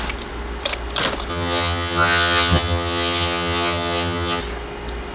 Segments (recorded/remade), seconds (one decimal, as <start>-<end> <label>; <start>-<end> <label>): 0.0-1.3 recorded; 1.3-4.4 remade; 4.4-5.1 recorded